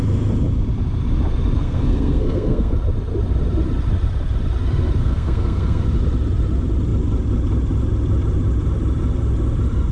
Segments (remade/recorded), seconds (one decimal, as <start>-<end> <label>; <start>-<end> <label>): 0.0-1.6 recorded; 1.6-2.7 remade; 2.7-5.0 recorded; 5.0-5.8 remade; 5.8-9.9 recorded